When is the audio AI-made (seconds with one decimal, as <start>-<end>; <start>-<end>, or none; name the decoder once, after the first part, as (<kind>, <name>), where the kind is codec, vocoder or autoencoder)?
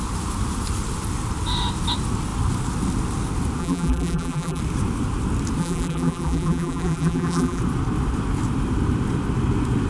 3.6-4.6 (vocoder, BigVGAN v2); 5.6-7.6